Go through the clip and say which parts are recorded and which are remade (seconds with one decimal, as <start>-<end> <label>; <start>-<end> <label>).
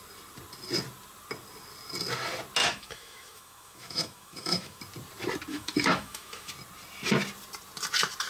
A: 0.0-2.6 recorded; 2.6-4.8 remade; 4.8-5.5 recorded; 5.5-6.5 remade; 6.5-8.3 recorded